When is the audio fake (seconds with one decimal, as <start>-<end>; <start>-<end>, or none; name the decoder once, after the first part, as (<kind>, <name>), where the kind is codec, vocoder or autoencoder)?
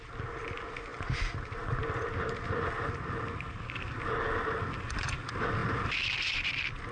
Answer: none